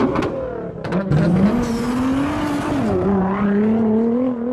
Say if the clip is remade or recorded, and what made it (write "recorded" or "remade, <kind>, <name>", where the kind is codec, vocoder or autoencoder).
recorded